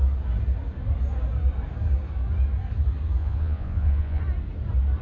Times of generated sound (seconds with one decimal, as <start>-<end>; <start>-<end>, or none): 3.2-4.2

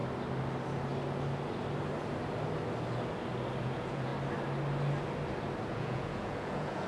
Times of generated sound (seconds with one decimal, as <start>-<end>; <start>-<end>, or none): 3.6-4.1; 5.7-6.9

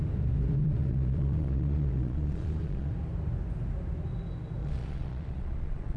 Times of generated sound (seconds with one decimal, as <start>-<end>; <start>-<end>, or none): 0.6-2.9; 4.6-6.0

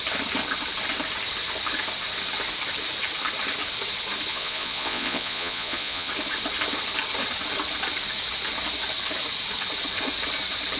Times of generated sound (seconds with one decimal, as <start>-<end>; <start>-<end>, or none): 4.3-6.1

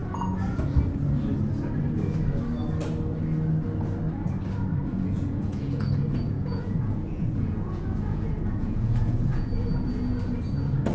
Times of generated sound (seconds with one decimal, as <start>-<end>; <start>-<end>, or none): 4.9-9.5